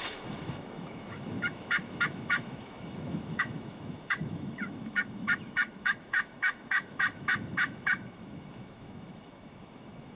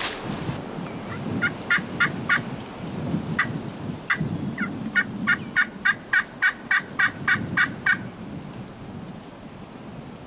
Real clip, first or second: second